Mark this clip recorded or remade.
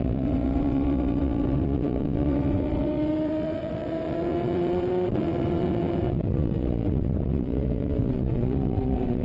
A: remade